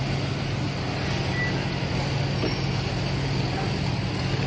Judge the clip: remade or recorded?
recorded